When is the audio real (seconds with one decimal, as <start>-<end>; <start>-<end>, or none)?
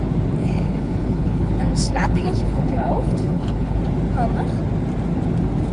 0.0-0.4; 3.8-5.7